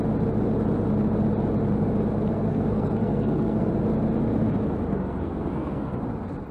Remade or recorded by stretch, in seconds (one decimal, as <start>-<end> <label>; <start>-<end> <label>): 0.0-2.3 recorded; 2.3-3.7 remade; 3.7-4.9 recorded; 4.9-6.0 remade; 6.0-6.5 recorded